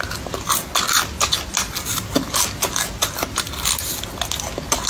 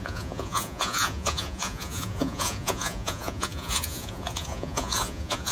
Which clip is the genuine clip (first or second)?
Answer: first